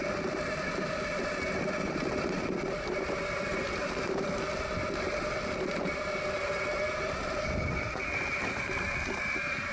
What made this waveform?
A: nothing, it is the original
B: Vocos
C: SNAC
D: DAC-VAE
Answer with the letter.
A